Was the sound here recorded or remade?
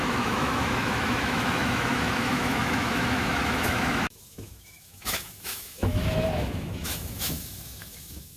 remade